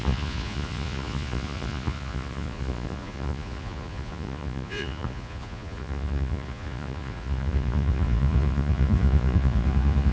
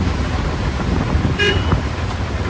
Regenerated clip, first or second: first